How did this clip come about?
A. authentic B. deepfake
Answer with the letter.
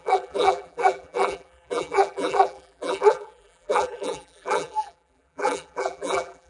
B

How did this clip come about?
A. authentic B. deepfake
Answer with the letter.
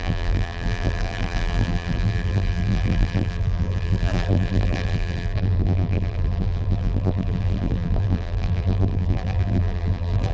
B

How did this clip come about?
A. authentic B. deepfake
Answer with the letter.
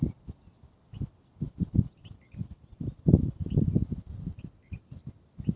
B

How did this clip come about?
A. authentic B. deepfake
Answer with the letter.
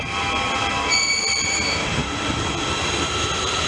B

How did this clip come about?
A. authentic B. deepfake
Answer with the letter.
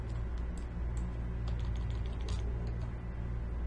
A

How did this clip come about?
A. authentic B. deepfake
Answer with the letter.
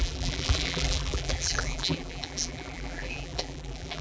B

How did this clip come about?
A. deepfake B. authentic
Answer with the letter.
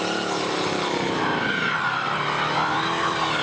A